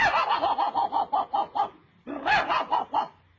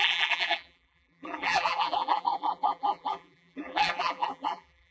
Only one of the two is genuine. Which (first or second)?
first